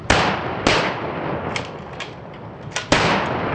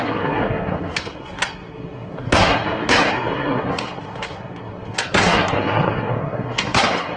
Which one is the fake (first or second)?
second